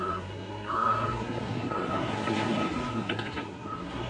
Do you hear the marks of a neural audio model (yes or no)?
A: yes